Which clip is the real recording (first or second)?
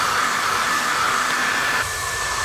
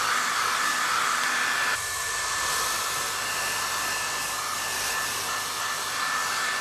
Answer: second